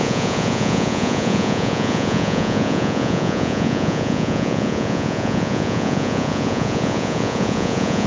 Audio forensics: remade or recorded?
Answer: remade